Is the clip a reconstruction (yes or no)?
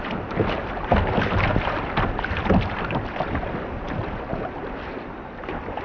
no